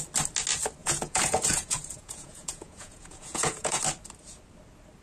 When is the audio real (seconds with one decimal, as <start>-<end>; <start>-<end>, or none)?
0.0-0.8; 3.8-5.0